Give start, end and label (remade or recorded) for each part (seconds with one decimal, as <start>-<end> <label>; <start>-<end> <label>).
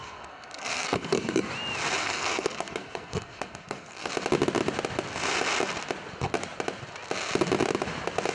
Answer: 0.0-1.5 remade; 1.5-2.0 recorded; 2.0-4.1 remade; 4.1-8.3 recorded